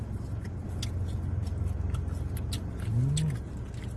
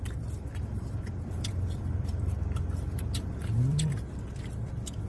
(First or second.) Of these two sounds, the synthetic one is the second